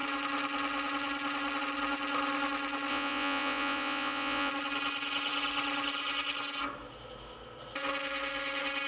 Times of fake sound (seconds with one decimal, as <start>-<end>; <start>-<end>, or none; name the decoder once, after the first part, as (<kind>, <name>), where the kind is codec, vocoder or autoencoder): 2.9-4.5 (vocoder, Vocos)